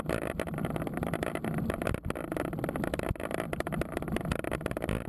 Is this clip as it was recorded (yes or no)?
yes